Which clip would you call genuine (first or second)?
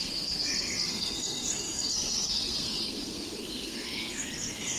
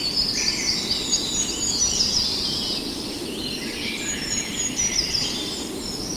second